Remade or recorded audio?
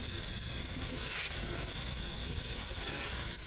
remade